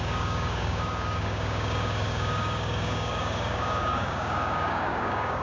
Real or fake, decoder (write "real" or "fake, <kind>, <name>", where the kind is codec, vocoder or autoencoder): fake, codec, DAC